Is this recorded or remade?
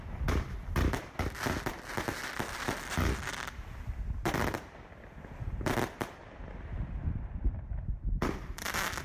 recorded